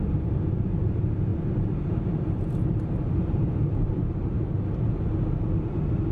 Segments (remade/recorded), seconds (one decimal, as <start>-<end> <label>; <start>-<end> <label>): 0.0-1.3 recorded; 1.3-4.5 remade; 4.5-6.1 recorded